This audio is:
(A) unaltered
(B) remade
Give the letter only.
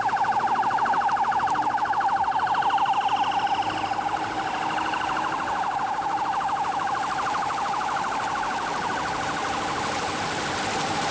A